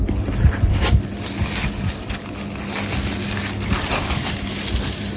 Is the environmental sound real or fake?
real